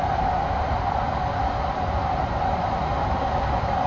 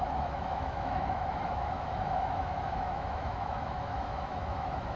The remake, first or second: second